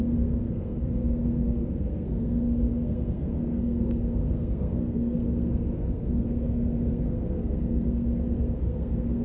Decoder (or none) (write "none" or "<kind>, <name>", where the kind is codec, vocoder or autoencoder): codec, SNAC